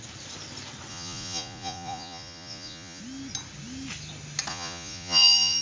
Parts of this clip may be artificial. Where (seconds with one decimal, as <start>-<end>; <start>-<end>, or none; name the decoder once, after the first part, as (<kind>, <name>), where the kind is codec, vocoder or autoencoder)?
0.9-3.0 (vocoder, Vocos); 4.5-5.6